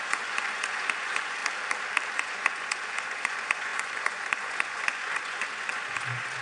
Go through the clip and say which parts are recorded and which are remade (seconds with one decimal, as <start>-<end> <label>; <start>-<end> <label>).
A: 0.0-1.4 remade; 1.4-2.1 recorded; 2.1-6.4 remade